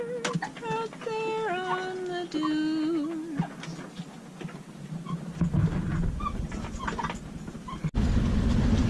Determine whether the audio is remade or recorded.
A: recorded